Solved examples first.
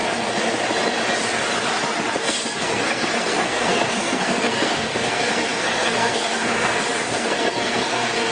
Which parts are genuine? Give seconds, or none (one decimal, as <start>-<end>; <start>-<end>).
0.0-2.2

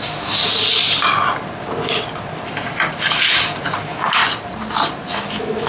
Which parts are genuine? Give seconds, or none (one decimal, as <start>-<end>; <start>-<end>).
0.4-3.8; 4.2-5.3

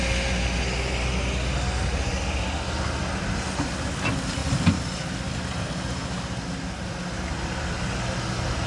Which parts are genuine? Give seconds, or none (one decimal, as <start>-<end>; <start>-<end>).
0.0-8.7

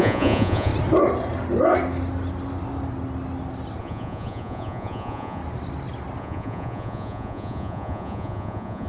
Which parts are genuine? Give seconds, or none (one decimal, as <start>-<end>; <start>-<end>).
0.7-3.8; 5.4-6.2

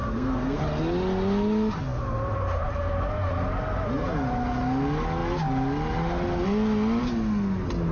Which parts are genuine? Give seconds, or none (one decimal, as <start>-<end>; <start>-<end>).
0.6-7.9

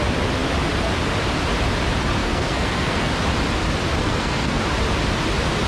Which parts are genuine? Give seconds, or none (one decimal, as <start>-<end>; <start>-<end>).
0.0-2.2; 3.1-4.0; 4.6-5.7

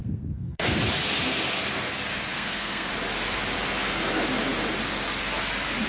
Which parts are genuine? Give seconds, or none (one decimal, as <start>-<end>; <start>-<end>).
0.8-2.3; 2.9-5.9

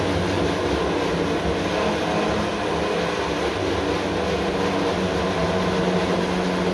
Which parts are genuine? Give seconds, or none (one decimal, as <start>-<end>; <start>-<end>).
0.0-6.7